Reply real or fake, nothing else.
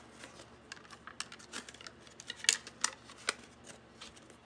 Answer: real